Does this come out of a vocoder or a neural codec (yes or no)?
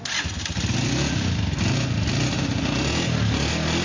no